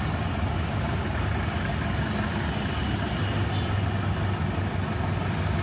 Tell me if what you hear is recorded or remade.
recorded